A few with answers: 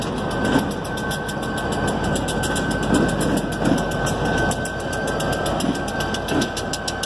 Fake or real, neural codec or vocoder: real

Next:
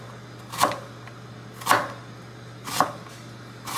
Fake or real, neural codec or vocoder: real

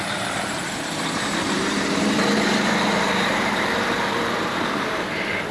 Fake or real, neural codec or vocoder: fake, vocoder, BigVGAN v2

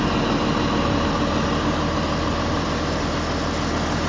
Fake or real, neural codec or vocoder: real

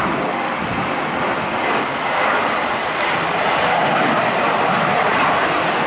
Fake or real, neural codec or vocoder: real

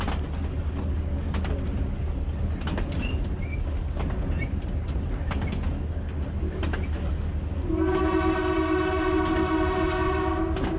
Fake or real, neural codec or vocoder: real